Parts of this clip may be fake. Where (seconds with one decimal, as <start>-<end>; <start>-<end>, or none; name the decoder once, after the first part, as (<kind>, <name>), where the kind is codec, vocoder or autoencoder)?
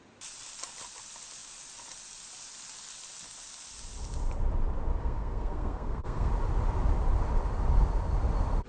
5.0-6.3 (codec, SNAC)